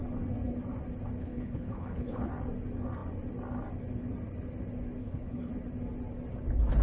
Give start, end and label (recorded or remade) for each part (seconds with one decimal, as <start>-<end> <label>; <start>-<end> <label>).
0.0-1.2 recorded; 1.2-2.3 remade; 2.3-5.0 recorded; 5.0-5.5 remade; 5.5-6.8 recorded